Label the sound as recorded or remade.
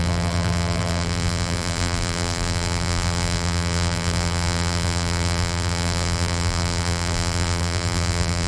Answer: remade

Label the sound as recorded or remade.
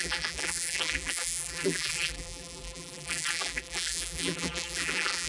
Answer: remade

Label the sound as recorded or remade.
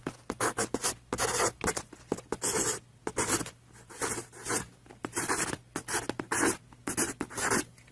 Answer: recorded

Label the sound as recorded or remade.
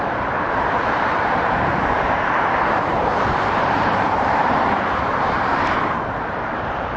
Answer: remade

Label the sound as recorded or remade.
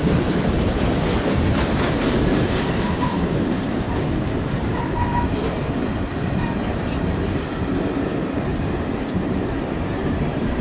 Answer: remade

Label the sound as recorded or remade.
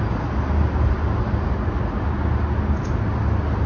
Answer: recorded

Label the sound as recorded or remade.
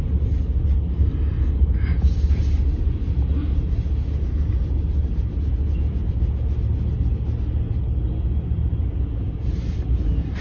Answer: recorded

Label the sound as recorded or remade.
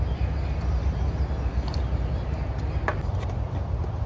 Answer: remade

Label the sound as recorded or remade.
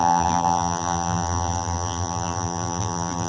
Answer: remade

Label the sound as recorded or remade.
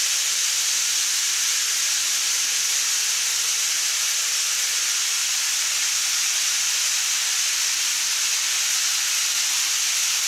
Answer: recorded